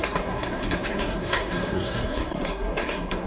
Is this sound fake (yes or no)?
yes